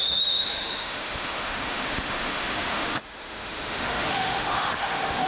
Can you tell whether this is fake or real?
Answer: fake